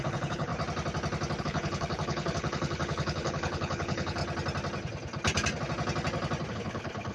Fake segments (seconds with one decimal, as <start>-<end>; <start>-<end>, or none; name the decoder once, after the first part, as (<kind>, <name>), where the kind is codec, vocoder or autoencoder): 0.0-0.5 (codec, HILCodec); 1.4-4.2; 6.5-7.1